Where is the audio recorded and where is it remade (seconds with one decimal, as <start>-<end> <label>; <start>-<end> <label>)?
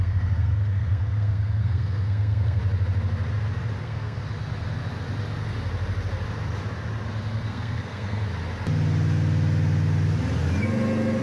0.0-2.6 remade; 2.6-3.8 recorded; 3.8-4.2 remade; 4.2-7.3 recorded; 7.3-8.3 remade; 8.3-11.2 recorded